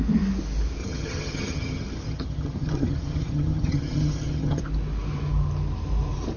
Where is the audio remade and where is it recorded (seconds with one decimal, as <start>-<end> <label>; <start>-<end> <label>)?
0.0-0.8 recorded; 0.8-4.6 remade; 4.6-6.4 recorded